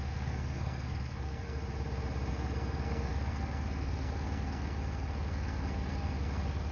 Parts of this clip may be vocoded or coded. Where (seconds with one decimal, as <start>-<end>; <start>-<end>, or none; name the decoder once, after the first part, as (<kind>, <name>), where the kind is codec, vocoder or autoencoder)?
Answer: 0.0-1.6 (codec, SNAC); 2.3-6.7